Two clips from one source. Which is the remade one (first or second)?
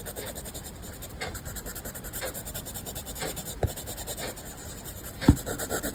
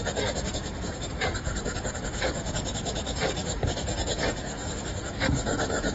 second